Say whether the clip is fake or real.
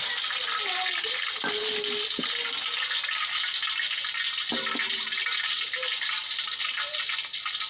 real